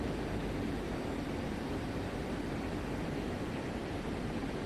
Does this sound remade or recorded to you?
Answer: remade